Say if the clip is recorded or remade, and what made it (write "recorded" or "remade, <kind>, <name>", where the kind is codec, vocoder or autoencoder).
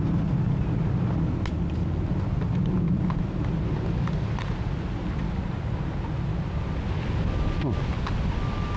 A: recorded